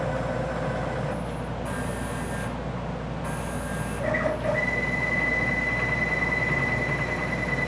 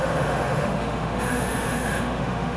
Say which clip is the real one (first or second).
first